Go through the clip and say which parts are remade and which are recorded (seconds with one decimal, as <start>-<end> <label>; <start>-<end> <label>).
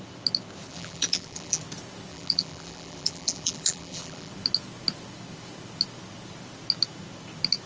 0.0-0.7 recorded; 0.7-1.6 remade; 1.6-2.1 recorded; 2.1-4.3 remade; 4.3-7.7 recorded